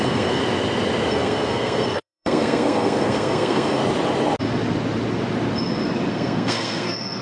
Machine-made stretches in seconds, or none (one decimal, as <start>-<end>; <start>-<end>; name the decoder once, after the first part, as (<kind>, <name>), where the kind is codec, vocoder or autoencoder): 0.0-0.4 (codec, SNAC); 1.1-3.8; 6.1-7.2